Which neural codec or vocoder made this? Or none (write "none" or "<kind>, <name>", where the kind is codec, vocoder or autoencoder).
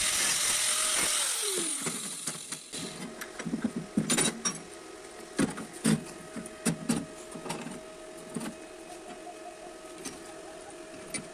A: none